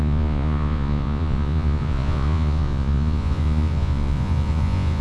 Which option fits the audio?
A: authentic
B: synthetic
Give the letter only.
B